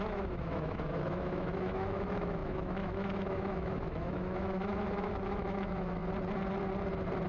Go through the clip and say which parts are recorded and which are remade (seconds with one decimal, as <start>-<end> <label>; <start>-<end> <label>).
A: 0.0-6.0 remade; 6.0-7.3 recorded